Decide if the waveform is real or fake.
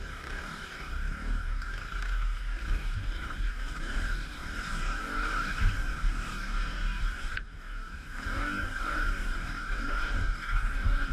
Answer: fake